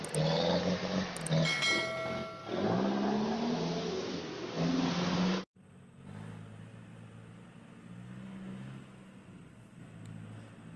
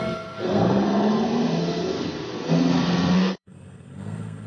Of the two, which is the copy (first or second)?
second